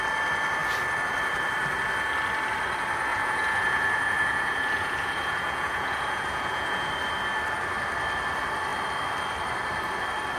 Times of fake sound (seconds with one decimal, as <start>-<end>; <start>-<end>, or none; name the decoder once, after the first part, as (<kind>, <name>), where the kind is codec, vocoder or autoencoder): 3.1-6.9 (vocoder, Vocos)